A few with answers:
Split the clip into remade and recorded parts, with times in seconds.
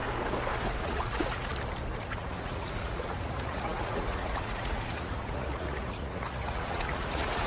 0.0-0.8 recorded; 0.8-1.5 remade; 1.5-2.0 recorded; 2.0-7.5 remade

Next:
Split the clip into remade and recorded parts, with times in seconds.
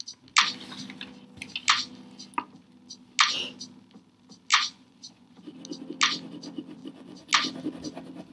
0.0-4.5 recorded; 4.5-5.4 remade; 5.4-6.8 recorded; 6.8-7.3 remade; 7.3-8.3 recorded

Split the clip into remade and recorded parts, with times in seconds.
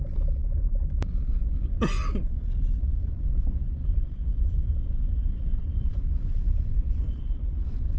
0.0-1.4 recorded; 1.4-2.0 remade; 2.0-2.9 recorded; 2.9-8.0 remade